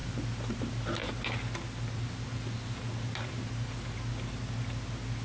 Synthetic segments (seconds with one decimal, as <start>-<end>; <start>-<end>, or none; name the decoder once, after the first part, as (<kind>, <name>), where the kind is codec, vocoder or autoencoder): none